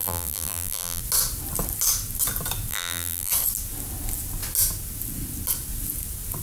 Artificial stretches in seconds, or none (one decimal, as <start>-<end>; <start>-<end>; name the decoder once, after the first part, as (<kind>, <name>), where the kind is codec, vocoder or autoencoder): 0.0-1.0 (vocoder, BigVGAN v2); 2.7-3.3

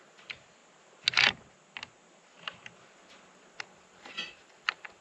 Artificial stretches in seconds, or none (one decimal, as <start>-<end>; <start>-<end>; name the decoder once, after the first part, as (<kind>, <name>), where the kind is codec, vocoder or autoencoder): 0.0-0.6 (vocoder, BigVGAN v2); 3.6-5.0

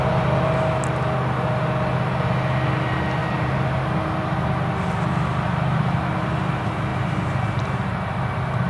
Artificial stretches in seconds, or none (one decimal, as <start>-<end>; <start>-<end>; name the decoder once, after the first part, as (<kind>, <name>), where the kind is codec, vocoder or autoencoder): 3.2-3.8 (vocoder, BigVGAN v2); 6.9-8.7

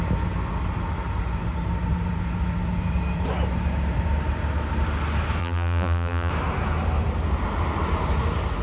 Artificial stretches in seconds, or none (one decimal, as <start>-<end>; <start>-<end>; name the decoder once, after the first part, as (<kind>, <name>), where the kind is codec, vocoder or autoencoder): 5.4-6.3 (vocoder, BigVGAN v2)

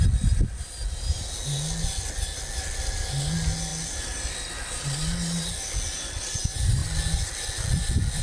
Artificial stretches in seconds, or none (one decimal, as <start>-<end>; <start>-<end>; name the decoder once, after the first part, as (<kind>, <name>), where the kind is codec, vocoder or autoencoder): none

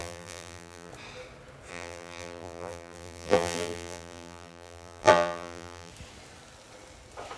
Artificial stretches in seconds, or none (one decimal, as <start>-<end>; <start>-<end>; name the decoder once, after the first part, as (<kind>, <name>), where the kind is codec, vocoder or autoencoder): 0.0-0.9 (vocoder, BigVGAN v2); 1.7-5.9

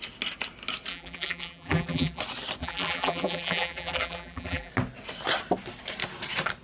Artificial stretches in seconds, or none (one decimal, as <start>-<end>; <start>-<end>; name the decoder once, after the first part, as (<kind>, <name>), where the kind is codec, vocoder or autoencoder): 0.9-2.2 (vocoder, BigVGAN v2); 2.6-4.7

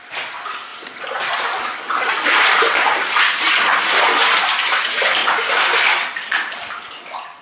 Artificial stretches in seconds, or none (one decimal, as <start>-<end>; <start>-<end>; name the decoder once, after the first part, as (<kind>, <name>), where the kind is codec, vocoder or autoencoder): none